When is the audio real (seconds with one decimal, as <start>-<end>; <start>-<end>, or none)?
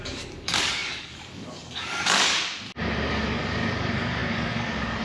2.3-3.1